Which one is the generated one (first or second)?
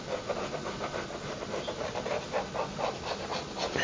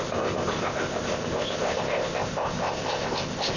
second